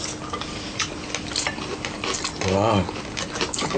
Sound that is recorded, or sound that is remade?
recorded